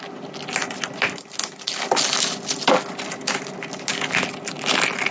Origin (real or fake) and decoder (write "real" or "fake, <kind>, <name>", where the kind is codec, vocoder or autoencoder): real